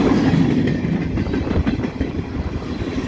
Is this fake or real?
real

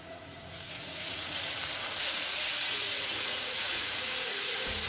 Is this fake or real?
fake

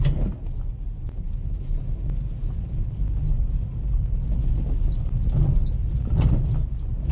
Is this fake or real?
real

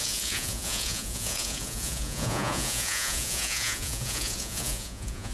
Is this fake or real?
fake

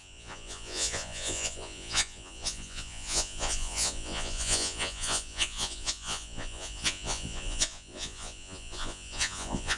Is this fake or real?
fake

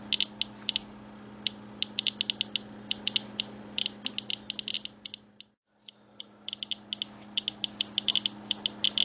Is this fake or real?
real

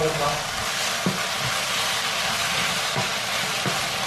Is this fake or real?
real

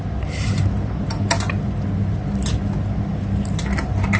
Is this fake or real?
real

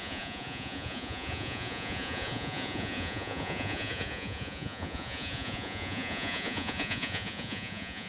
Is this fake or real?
fake